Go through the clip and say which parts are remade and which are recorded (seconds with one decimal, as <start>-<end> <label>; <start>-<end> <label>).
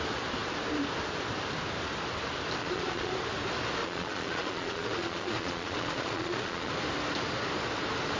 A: 0.0-2.6 recorded; 2.6-3.1 remade; 3.1-3.8 recorded; 3.8-6.7 remade; 6.7-8.2 recorded